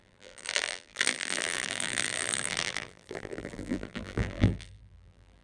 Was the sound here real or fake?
fake